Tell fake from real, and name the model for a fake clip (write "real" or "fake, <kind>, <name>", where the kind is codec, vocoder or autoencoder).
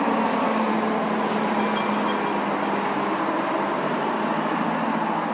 real